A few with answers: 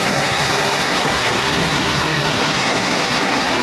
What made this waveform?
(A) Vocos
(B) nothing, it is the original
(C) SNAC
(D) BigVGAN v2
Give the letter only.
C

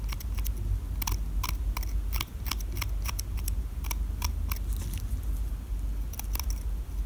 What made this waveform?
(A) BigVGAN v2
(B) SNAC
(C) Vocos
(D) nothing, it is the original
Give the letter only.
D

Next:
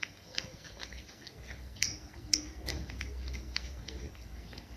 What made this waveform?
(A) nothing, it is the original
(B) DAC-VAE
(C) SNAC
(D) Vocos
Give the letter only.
C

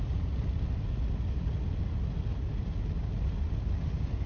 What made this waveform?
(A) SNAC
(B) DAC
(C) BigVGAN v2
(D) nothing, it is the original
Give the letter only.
D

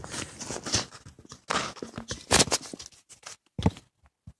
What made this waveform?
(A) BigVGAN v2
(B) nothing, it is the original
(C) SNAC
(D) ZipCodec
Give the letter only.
B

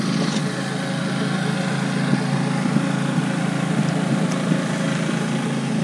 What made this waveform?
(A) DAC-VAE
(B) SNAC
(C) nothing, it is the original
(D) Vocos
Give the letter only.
C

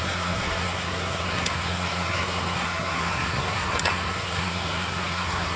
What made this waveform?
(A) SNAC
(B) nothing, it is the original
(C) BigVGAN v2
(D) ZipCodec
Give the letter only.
A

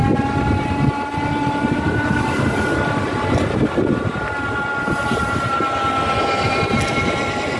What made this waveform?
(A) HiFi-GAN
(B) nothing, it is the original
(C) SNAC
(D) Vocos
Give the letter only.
B